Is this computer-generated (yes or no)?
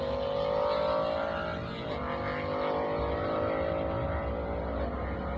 no